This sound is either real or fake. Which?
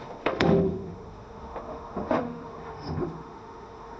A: fake